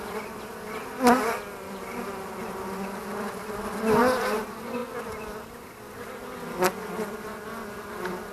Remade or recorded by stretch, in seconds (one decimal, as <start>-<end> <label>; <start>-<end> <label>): 0.0-8.3 recorded